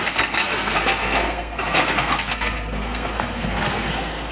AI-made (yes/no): yes